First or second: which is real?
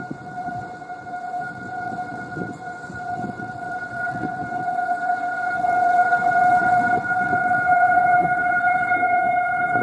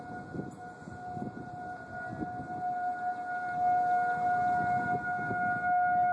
second